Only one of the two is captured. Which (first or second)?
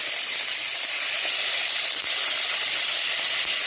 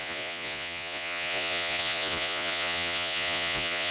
first